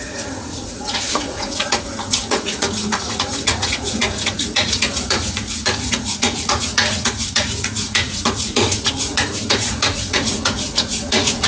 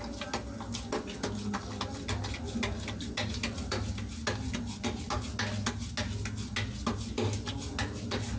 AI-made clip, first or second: first